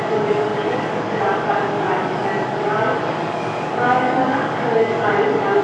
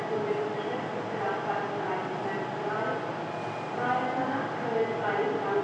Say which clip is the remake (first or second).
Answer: first